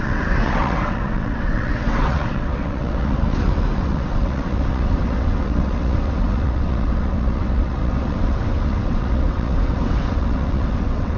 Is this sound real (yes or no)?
no